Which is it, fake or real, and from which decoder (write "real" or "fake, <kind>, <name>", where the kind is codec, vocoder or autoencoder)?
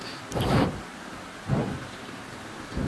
real